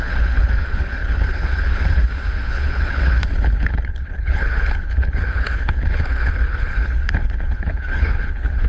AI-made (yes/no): yes